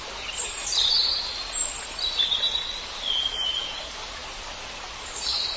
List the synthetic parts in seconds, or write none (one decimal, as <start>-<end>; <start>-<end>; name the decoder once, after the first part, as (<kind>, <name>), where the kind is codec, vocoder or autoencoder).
none